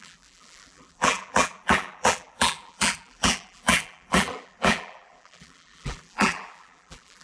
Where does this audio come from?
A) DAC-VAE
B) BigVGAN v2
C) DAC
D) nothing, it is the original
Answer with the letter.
B